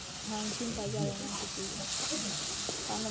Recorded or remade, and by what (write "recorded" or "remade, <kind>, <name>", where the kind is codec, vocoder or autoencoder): recorded